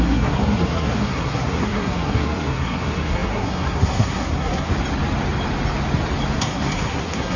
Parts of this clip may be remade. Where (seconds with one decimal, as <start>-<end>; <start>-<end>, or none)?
0.0-4.7; 6.4-7.4